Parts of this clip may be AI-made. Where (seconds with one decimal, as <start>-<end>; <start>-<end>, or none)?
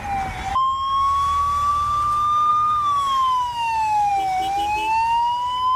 0.5-1.7; 2.5-4.1